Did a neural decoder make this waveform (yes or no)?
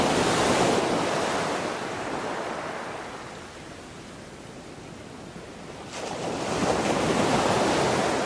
no